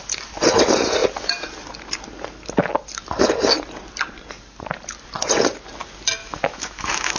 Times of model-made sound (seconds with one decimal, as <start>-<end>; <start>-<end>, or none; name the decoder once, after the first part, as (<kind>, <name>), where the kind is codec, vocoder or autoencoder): 6.2-7.2 (autoencoder, DAC-VAE)